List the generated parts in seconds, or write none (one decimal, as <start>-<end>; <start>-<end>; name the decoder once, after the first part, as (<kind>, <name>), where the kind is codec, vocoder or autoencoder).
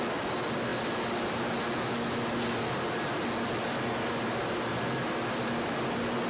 none